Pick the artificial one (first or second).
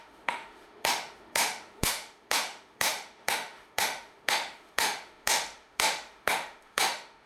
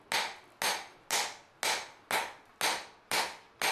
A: first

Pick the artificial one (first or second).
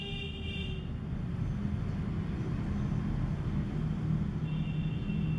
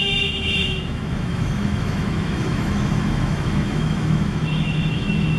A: second